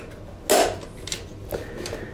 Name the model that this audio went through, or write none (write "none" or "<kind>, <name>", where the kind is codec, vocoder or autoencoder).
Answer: none